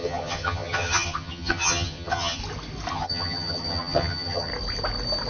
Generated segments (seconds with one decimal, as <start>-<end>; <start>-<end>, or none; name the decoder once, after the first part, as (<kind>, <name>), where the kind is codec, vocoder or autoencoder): 0.0-2.4 (vocoder, HiFi-GAN); 2.9-4.5

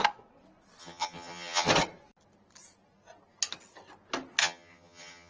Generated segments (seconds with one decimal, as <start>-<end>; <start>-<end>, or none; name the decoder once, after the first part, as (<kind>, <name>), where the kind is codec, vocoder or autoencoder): 0.8-1.7 (vocoder, HiFi-GAN); 4.4-5.3